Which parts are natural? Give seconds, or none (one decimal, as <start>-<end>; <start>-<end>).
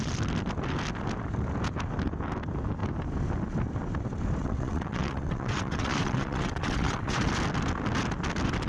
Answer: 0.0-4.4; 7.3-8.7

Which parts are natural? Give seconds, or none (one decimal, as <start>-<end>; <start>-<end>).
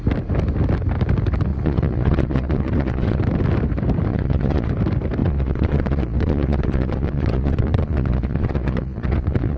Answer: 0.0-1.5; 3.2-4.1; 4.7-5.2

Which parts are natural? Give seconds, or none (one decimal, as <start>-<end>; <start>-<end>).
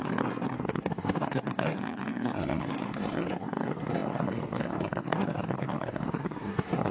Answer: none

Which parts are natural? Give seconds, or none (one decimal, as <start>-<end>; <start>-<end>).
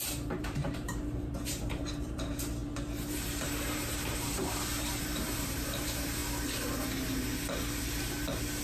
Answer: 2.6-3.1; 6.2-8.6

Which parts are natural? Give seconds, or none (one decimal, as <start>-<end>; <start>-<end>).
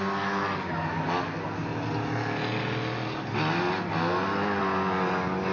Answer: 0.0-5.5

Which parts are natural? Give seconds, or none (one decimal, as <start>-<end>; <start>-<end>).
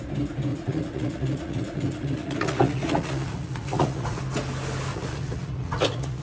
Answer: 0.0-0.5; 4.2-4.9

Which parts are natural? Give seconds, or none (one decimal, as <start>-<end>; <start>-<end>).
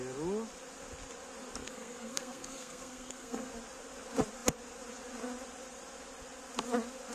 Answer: 0.0-1.6; 3.5-7.1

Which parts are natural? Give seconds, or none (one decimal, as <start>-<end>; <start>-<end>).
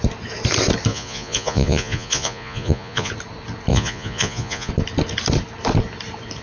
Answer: 0.0-0.9; 3.1-3.7; 4.7-6.4